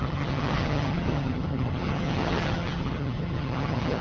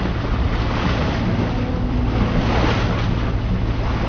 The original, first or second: second